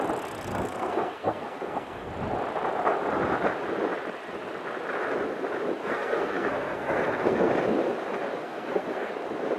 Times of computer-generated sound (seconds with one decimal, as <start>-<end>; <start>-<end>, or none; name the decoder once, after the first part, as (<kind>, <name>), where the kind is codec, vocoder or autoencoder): 0.5-2.1 (codec, SNAC); 5.8-7.5; 8.4-9.1